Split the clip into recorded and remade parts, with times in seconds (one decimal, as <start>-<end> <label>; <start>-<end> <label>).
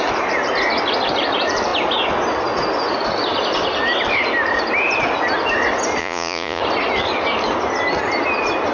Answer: 0.0-6.0 recorded; 6.0-6.6 remade; 6.6-8.7 recorded